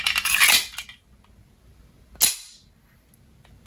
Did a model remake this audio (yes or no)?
no